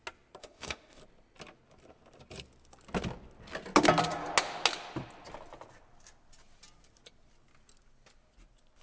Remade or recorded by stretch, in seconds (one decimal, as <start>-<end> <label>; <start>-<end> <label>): 0.0-0.4 recorded; 0.4-1.0 remade; 1.0-8.8 recorded